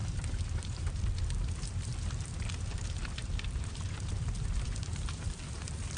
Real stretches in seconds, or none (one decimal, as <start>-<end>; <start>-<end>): 1.0-3.2; 5.4-6.0